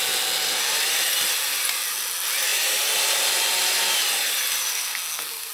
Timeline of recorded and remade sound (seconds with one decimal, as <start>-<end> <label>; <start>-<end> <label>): 0.0-4.7 recorded; 4.7-5.5 remade